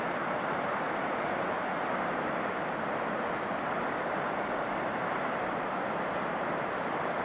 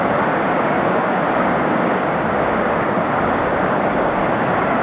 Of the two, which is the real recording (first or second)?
first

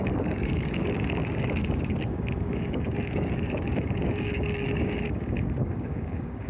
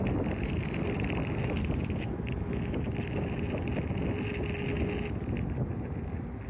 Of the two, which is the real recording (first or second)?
second